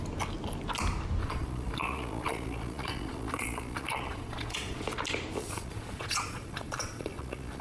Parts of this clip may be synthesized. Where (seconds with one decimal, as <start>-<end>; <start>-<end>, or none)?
1.2-4.8; 5.4-7.6